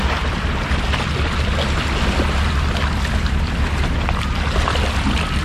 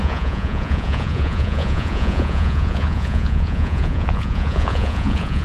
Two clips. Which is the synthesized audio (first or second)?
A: second